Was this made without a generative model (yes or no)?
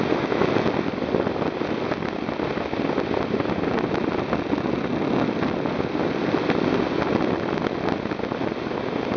yes